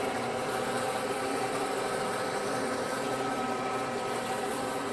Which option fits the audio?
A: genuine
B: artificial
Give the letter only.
B